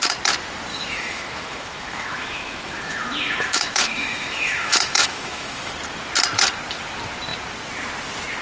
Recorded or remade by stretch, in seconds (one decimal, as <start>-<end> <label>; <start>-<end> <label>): 0.0-0.7 recorded; 0.7-5.7 remade; 5.7-8.4 recorded